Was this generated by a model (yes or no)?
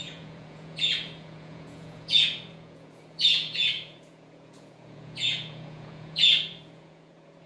yes